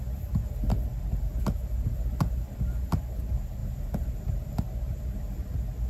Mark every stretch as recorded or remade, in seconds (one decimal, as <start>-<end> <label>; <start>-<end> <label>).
0.0-5.9 recorded